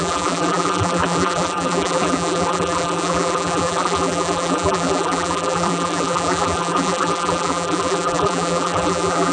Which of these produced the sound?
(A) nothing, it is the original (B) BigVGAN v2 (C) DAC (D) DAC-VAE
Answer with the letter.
B